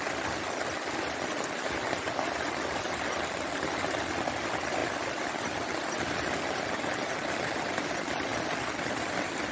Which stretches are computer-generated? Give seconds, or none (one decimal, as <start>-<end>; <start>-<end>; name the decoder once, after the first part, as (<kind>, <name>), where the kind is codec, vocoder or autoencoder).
none